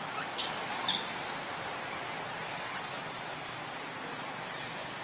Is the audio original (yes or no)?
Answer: yes